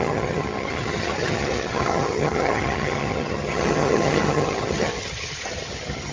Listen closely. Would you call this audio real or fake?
fake